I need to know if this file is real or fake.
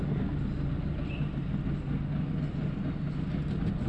real